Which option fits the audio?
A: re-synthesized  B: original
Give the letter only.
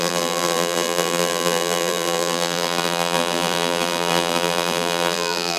A